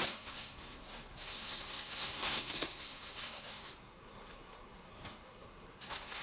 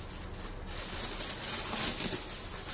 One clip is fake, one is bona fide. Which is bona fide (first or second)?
second